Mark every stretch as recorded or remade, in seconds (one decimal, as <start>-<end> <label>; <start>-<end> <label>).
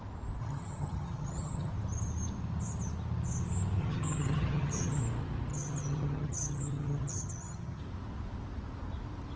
0.0-0.4 recorded; 0.4-1.7 remade; 1.7-3.8 recorded; 3.8-5.0 remade; 5.0-5.5 recorded; 5.5-7.8 remade; 7.8-9.4 recorded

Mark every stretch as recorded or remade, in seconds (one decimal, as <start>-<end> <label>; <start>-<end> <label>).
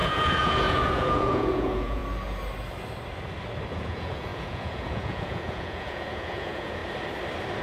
0.0-2.0 remade; 2.0-3.7 recorded; 3.7-6.8 remade; 6.8-7.6 recorded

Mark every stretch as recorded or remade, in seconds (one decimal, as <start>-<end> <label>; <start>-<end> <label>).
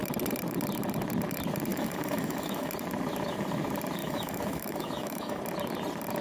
0.0-1.7 recorded; 1.7-2.7 remade; 2.7-4.0 recorded; 4.0-5.4 remade; 5.4-6.2 recorded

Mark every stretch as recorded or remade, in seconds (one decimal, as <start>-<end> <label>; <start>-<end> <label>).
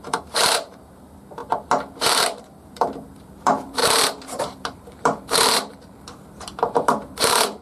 0.0-1.4 remade; 1.4-2.0 recorded; 2.0-7.6 remade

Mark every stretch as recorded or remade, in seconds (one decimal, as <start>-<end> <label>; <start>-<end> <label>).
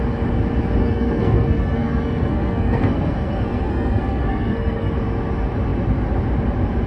0.0-0.8 recorded; 0.8-4.9 remade; 4.9-6.9 recorded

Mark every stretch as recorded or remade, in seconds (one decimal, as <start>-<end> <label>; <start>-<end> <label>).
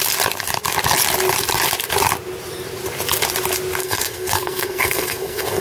0.0-3.8 recorded; 3.8-5.6 remade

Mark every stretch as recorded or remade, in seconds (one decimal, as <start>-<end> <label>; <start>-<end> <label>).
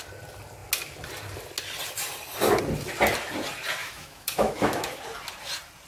0.0-3.8 recorded; 3.8-5.0 remade; 5.0-5.9 recorded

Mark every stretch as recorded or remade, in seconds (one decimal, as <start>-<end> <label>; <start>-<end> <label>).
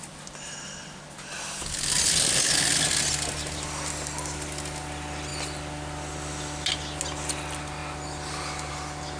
0.0-9.2 recorded